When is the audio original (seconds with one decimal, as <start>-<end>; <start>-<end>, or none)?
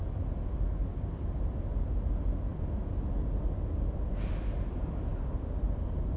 0.0-6.2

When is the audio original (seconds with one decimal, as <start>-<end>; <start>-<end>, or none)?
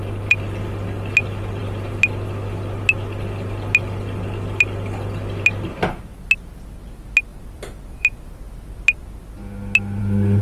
0.0-7.3; 8.6-10.4